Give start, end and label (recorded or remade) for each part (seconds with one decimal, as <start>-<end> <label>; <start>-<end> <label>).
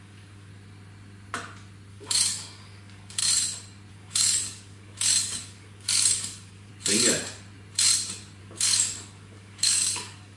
0.0-0.5 remade; 0.5-1.9 recorded; 1.9-3.2 remade; 3.2-3.9 recorded; 3.9-6.7 remade; 6.7-8.4 recorded; 8.4-10.4 remade